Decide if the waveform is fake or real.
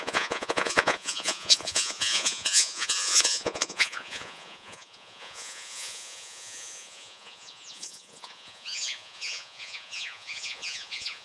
fake